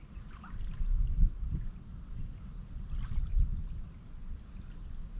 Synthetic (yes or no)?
no